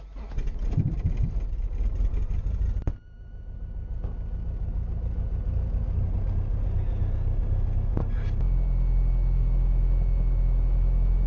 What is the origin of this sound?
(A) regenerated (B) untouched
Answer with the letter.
B